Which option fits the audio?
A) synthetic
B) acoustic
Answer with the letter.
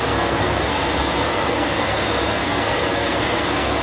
A